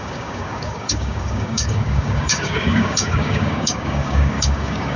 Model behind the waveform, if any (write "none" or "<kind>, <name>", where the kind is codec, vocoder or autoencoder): codec, DAC